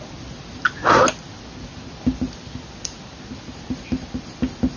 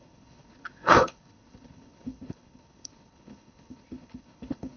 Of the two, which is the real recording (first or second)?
first